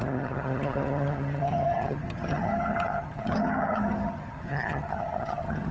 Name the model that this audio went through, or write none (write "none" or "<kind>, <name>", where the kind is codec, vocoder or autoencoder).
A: vocoder, HiFi-GAN